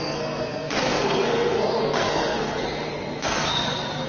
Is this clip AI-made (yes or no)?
yes